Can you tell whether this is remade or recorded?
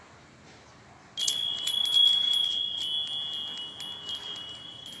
recorded